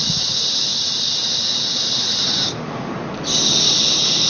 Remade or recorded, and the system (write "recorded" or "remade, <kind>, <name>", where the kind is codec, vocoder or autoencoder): recorded